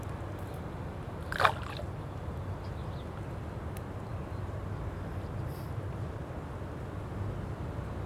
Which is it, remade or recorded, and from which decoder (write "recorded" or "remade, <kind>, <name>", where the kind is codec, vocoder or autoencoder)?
recorded